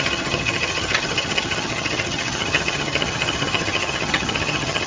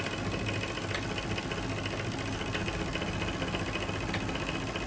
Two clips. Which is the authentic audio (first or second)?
second